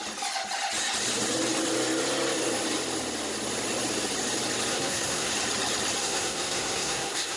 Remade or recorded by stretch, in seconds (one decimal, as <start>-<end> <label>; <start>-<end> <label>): 0.0-4.7 recorded; 4.7-5.3 remade; 5.3-6.0 recorded; 6.0-7.4 remade